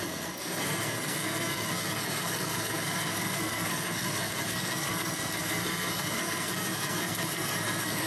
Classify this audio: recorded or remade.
remade